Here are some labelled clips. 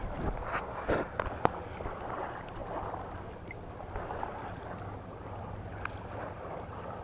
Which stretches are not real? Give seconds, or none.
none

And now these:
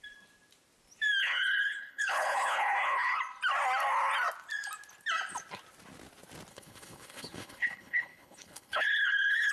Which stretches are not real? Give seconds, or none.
1.2-3.2 (codec, HILCodec); 6.5-9.5

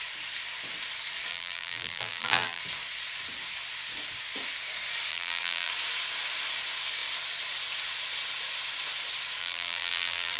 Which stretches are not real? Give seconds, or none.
1.3-2.6 (vocoder, BigVGAN v2); 5.1-5.7; 9.4-10.4